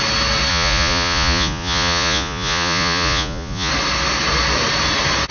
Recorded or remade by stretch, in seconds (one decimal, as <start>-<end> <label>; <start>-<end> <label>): 0.0-0.5 recorded; 0.5-3.7 remade; 3.7-5.3 recorded